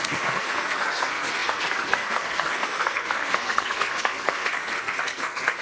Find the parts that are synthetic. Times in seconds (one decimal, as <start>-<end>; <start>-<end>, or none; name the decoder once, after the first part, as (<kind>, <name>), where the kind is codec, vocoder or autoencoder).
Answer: 0.0-5.6 (codec, SNAC)